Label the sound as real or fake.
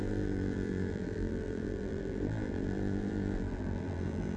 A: fake